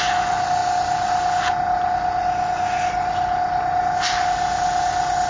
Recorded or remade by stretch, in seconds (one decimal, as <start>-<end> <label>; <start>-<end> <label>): 0.0-5.3 recorded